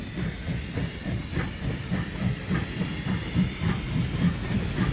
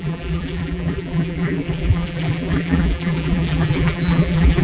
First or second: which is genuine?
first